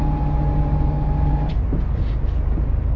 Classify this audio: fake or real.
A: real